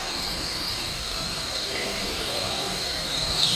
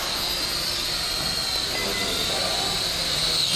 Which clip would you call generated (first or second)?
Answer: first